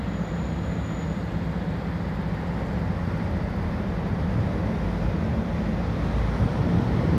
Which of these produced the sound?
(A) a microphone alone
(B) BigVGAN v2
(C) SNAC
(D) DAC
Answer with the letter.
A